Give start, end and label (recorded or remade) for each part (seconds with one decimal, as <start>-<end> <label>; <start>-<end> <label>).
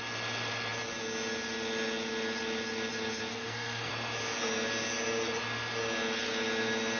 0.0-3.3 recorded; 3.3-3.9 remade; 3.9-7.0 recorded